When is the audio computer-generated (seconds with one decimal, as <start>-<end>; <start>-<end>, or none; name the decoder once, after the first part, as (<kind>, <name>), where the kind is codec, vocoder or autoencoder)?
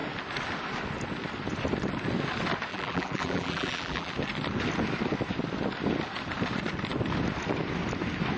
2.7-4.1 (vocoder, BigVGAN v2)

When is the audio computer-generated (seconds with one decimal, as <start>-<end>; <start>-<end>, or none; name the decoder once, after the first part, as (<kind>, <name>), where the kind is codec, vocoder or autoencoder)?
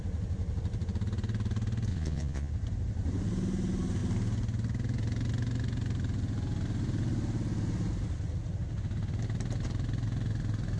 1.9-2.5 (vocoder, Vocos)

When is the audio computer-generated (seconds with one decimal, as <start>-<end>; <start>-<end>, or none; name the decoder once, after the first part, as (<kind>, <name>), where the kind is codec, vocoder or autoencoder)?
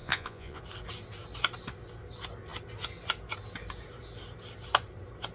0.0-0.6 (vocoder, Vocos)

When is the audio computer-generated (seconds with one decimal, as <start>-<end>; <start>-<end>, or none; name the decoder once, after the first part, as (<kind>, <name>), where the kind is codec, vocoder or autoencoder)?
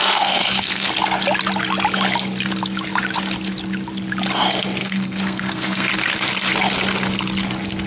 0.0-0.9 (codec, SNAC); 4.8-5.9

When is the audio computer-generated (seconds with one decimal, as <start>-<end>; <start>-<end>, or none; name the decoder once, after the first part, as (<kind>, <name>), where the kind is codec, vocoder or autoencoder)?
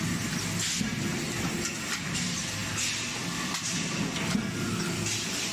none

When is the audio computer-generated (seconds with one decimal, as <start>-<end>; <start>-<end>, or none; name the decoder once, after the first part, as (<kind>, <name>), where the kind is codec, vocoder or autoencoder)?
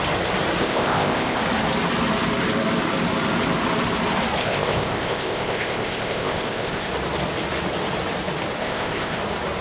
0.6-1.4 (codec, ZipCodec); 4.4-6.9; 8.6-9.2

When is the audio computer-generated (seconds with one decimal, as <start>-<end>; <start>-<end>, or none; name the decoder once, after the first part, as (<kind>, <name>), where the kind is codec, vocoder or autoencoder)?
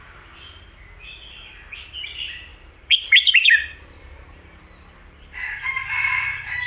2.5-6.7 (vocoder, BigVGAN v2)